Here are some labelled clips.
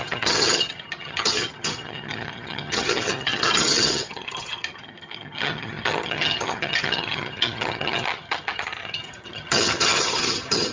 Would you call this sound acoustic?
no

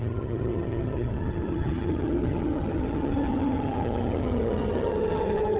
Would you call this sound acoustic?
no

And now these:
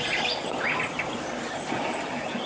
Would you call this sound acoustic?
yes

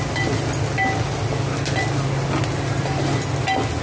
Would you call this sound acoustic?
yes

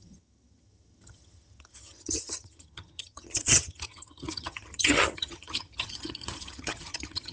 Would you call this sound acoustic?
no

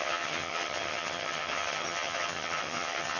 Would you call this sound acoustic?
no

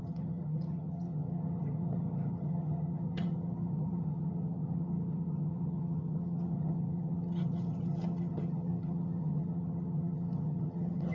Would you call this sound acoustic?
no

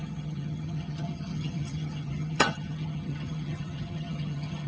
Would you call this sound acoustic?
no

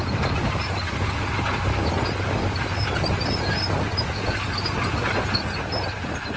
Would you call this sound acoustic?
yes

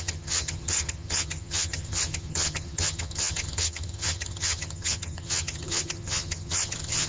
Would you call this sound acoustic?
no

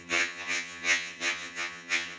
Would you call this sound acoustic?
no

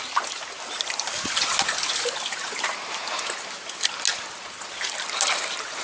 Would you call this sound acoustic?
yes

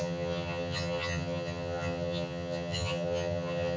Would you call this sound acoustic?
no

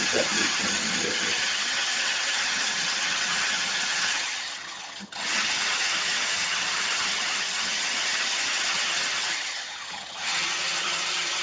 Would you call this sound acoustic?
no